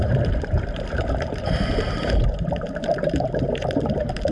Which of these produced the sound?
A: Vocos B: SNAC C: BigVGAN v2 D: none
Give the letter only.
C